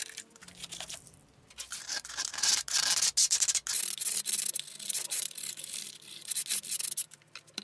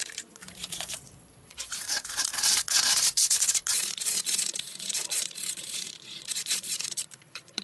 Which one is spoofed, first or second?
second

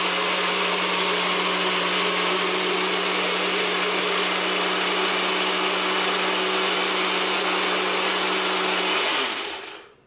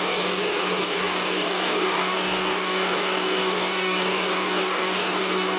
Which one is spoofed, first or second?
second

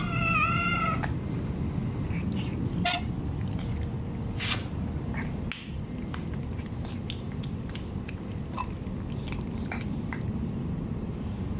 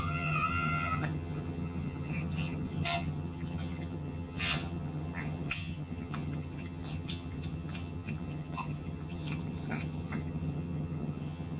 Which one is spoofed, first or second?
second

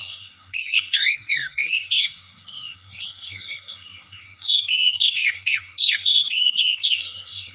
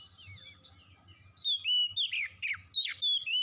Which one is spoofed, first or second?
first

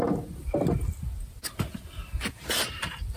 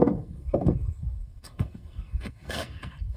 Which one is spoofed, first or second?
second